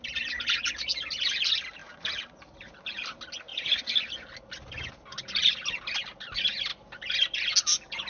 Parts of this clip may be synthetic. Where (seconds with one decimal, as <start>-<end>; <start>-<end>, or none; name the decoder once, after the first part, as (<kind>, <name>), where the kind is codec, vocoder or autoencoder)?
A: none